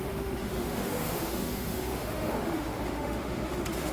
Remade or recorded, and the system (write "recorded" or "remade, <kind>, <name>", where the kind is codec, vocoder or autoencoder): remade, autoencoder, DAC-VAE